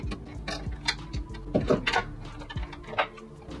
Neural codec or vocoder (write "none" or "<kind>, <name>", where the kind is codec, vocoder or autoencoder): none